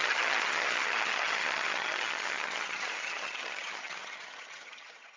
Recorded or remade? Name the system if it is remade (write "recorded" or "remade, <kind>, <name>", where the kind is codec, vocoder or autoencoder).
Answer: remade, vocoder, HiFi-GAN